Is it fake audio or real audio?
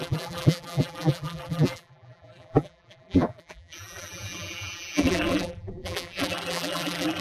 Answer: fake